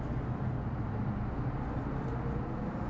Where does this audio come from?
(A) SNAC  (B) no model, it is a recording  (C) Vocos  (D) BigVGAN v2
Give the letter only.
B